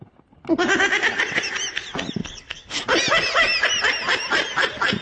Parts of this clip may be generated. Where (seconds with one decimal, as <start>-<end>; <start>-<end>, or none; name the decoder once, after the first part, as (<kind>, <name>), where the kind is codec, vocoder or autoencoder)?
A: 2.2-2.8 (codec, HILCodec)